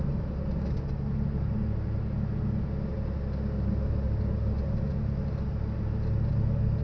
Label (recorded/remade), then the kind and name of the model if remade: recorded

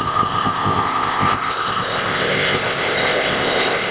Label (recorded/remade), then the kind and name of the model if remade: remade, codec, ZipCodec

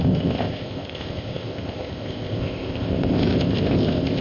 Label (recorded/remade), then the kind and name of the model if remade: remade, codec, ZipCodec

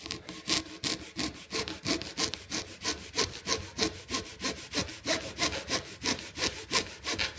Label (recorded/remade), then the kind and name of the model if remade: recorded